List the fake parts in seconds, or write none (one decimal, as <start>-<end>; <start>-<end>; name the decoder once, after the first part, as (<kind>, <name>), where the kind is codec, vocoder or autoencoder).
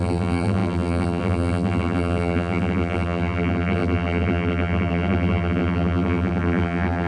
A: 0.0-7.1 (vocoder, BigVGAN v2)